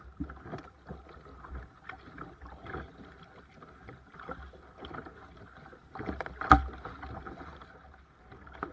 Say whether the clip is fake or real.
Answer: real